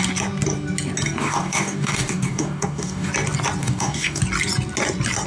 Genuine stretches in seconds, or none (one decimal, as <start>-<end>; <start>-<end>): 0.0-1.2; 3.1-3.6; 4.2-5.3